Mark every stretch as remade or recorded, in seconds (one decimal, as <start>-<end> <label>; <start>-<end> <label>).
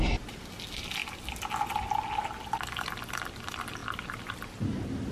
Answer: 0.0-5.1 recorded